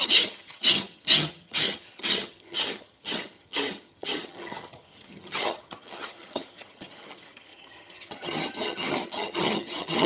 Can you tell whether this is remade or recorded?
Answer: remade